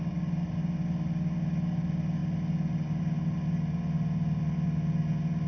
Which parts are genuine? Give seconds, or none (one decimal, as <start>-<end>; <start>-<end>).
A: 0.0-5.5